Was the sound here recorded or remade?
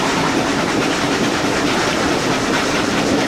remade